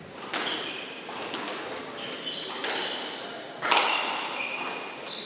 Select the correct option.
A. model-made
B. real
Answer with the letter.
B